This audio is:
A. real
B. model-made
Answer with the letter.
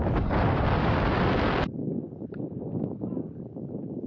B